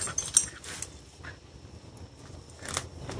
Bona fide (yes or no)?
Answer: yes